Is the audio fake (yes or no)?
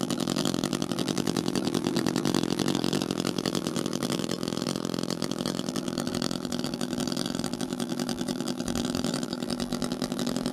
yes